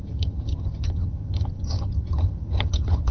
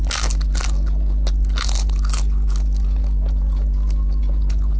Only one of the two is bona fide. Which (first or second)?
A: second